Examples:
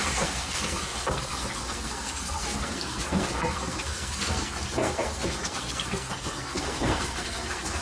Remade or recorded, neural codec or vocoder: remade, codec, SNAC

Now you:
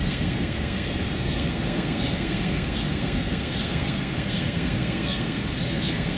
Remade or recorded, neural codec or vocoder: remade, codec, SNAC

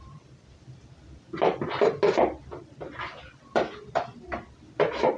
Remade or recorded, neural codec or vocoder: recorded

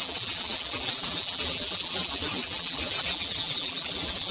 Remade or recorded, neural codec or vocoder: remade, vocoder, BigVGAN v2